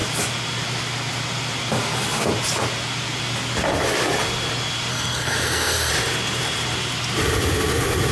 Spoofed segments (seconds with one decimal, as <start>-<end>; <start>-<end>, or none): 4.9-5.9